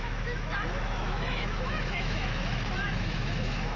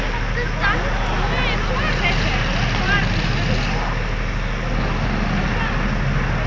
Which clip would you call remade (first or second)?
first